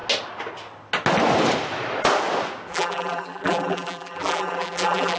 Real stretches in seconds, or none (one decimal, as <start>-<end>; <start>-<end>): 0.0-2.7